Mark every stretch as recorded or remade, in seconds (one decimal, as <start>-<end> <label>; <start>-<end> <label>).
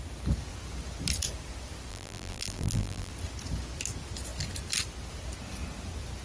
0.0-1.9 recorded; 1.9-3.1 remade; 3.1-6.2 recorded